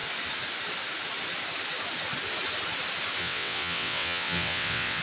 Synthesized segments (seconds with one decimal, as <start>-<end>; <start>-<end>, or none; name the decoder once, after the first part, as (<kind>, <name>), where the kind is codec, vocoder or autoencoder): 3.2-5.0 (vocoder, WaveNeXt)